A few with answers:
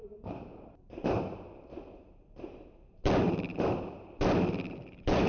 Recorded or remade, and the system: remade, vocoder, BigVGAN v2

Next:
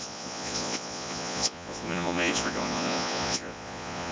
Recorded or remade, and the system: remade, vocoder, Vocos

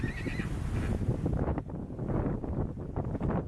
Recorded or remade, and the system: recorded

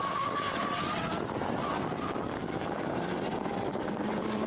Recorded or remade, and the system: remade, vocoder, BigVGAN v2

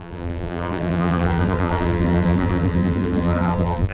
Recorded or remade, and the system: remade, vocoder, BigVGAN v2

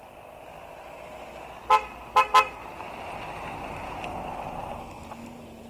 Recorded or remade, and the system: recorded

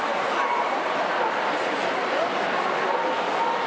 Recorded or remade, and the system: recorded